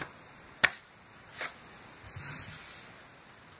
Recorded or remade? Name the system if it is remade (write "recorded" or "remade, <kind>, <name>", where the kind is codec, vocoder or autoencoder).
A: recorded